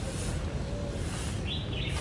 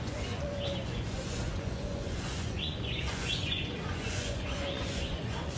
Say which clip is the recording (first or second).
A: first